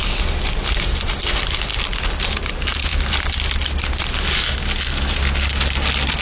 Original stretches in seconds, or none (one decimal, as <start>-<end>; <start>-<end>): 0.0-6.2